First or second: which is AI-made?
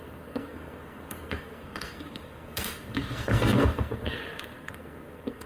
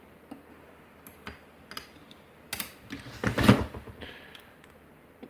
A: first